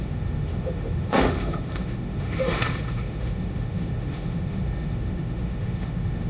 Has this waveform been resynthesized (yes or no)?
yes